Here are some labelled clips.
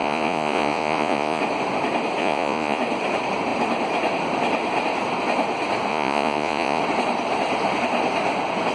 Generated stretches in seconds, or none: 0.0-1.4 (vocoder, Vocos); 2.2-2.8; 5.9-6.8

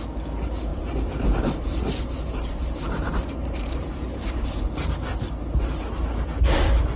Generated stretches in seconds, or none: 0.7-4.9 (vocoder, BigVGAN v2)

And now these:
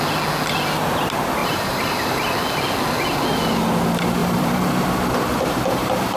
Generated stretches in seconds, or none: 1.4-2.3 (vocoder, BigVGAN v2); 4.2-6.2

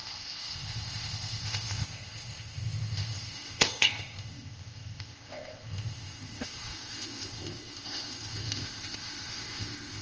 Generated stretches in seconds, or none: 0.0-10.0 (codec, ZipCodec)